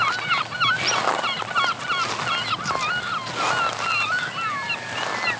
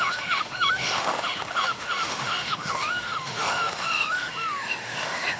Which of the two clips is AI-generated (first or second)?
second